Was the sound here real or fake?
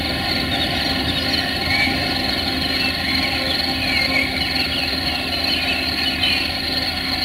fake